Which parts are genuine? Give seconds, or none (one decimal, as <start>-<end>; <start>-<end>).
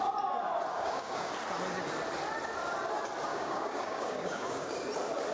0.0-0.7; 1.3-3.3; 4.7-5.3